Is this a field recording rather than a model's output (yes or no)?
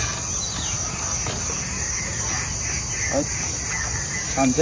yes